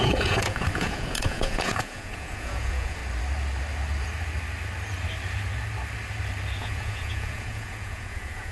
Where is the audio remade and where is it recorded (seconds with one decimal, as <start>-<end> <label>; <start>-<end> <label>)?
0.0-3.0 remade; 3.0-6.6 recorded; 6.6-8.5 remade